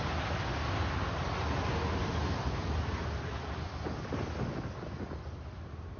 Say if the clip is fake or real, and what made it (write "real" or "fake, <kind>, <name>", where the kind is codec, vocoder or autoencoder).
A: real